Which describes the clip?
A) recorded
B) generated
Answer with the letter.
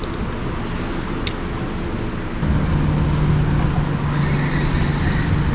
A